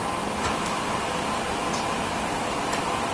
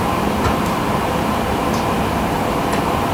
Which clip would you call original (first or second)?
first